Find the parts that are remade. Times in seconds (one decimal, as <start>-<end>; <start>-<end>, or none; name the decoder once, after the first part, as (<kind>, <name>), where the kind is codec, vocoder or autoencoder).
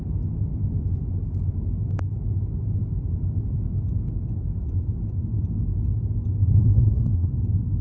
6.6-7.3 (codec, SNAC)